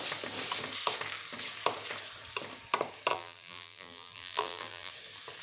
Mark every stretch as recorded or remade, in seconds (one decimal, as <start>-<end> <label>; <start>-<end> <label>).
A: 0.0-3.1 recorded; 3.1-4.9 remade; 4.9-5.4 recorded